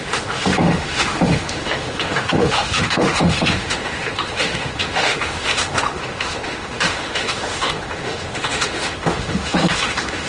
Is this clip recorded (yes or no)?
no